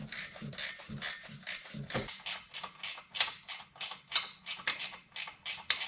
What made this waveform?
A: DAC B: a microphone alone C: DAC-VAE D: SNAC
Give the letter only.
B